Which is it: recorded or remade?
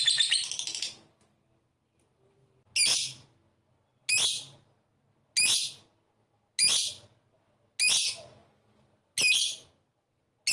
recorded